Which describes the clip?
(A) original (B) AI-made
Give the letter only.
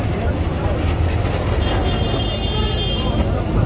A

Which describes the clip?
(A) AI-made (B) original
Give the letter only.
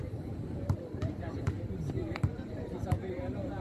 A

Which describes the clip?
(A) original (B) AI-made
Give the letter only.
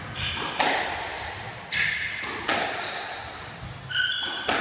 A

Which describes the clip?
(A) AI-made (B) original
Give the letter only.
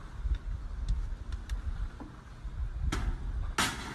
B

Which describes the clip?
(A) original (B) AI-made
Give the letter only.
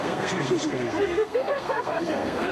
B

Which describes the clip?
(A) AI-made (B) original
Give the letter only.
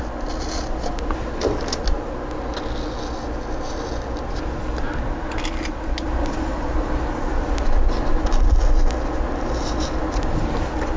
B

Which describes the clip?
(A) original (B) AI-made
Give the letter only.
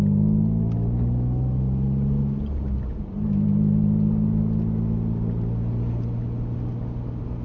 A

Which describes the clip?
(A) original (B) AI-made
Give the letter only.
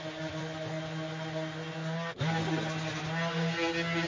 A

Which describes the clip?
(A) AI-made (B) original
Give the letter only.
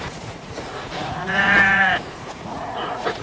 A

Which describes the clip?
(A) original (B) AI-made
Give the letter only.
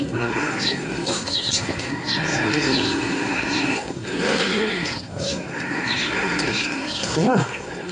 B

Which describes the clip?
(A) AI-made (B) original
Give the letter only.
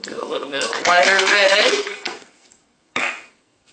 A